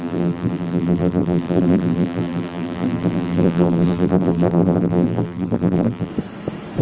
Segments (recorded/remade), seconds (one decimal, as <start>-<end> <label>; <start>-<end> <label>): 0.0-6.1 remade; 6.1-6.8 recorded